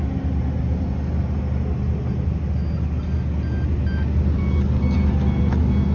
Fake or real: real